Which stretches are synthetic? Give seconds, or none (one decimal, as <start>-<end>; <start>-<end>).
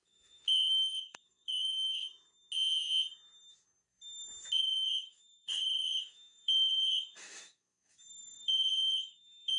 0.0-2.0; 4.6-9.6